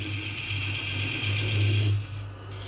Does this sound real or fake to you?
real